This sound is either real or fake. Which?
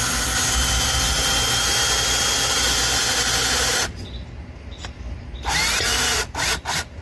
real